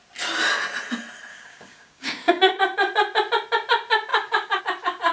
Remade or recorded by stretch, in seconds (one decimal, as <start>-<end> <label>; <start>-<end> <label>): 0.0-1.3 recorded; 1.3-2.6 remade; 2.6-4.1 recorded; 4.1-4.6 remade; 4.6-5.1 recorded